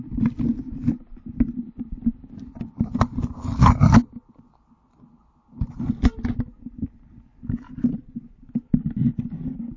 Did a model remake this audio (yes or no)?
no